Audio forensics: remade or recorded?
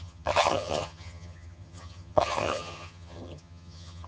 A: remade